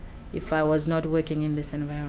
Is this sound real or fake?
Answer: fake